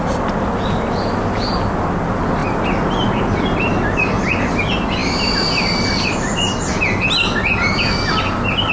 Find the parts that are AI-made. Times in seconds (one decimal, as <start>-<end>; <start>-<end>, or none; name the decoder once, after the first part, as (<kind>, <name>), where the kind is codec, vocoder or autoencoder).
none